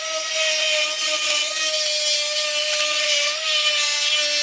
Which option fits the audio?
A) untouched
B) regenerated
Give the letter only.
A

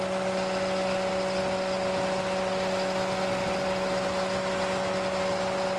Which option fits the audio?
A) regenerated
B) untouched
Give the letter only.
B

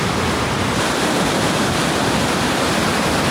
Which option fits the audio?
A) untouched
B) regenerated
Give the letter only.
B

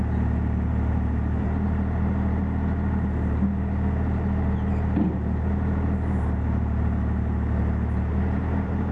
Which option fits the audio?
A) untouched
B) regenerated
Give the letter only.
B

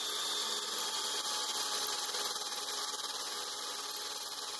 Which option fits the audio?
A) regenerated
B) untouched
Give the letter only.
B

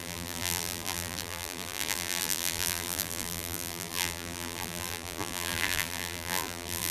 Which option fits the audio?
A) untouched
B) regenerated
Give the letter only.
B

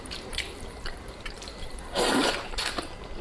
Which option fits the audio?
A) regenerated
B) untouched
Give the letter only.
A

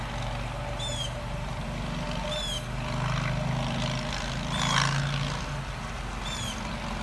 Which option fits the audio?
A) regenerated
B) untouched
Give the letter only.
B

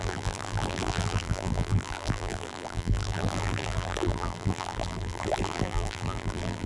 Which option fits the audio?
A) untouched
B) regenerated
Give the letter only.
B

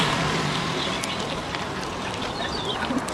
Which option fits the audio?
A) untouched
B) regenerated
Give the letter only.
A